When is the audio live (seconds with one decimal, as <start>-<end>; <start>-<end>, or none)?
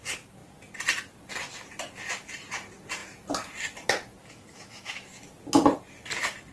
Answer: 0.0-4.2; 5.2-6.5